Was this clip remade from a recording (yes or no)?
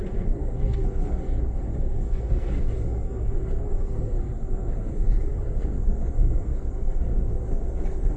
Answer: yes